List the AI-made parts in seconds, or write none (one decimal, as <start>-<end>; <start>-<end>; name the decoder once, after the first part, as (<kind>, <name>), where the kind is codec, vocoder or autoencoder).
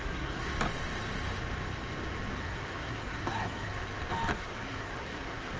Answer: 0.0-0.5 (codec, SNAC); 2.4-3.7; 4.3-5.6